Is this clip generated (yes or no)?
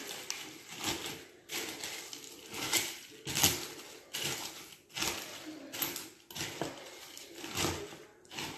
no